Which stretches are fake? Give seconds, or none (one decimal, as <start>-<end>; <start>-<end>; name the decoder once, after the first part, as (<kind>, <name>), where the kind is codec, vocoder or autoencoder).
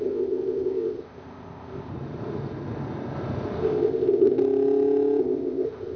0.0-1.9 (codec, ZipCodec); 3.6-4.4; 5.2-6.0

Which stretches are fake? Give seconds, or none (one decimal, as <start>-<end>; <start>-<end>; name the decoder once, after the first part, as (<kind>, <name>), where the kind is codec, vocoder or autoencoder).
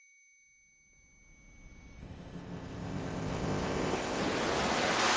2.0-4.2 (codec, ZipCodec)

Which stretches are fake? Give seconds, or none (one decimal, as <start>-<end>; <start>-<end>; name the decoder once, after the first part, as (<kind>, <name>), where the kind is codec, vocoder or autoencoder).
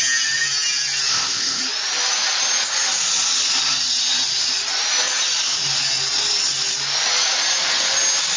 1.1-1.6 (codec, ZipCodec)